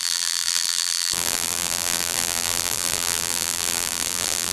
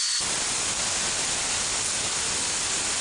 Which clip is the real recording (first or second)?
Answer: second